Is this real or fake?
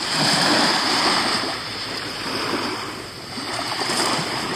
fake